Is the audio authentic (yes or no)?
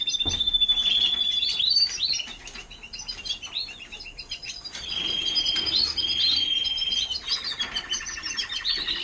yes